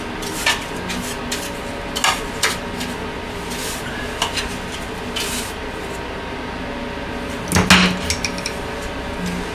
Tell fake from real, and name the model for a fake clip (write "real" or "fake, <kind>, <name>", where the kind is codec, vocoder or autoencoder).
real